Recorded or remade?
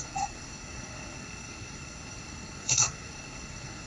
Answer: remade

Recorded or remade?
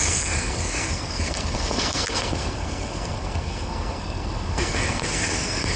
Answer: remade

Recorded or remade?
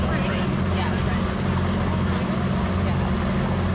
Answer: recorded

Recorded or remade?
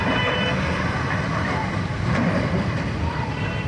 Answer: remade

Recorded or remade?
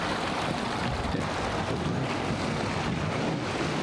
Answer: recorded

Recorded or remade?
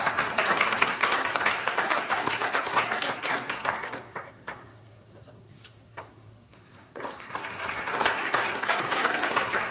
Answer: remade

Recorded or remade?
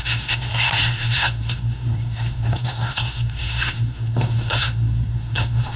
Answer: remade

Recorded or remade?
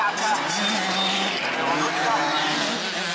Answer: recorded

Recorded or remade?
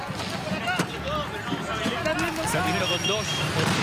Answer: recorded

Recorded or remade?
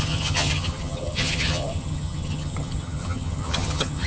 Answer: remade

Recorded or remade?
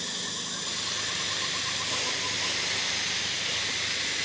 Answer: recorded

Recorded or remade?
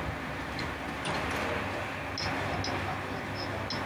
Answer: recorded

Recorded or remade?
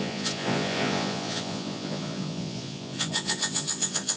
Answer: remade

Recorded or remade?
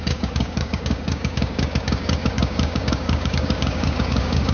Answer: remade